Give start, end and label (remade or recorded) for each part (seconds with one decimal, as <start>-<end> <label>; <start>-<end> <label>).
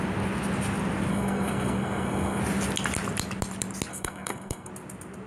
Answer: 0.0-1.1 recorded; 1.1-2.4 remade; 2.4-3.9 recorded; 3.9-4.7 remade; 4.7-5.3 recorded